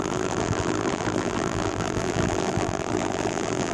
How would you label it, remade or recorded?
remade